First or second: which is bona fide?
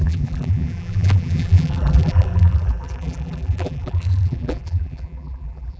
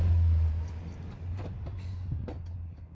second